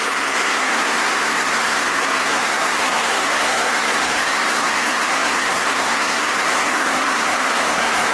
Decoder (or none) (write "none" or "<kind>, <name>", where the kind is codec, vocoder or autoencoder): codec, SNAC